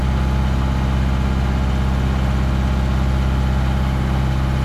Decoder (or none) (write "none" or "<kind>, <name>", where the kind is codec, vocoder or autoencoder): none